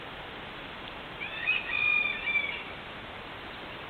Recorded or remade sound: recorded